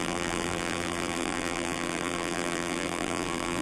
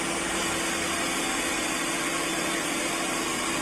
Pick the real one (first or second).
second